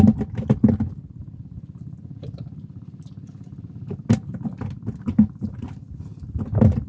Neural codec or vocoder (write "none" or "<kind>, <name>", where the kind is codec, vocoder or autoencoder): none